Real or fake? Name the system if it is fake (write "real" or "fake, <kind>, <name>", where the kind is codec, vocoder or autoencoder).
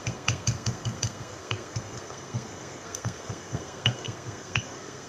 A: fake, codec, SNAC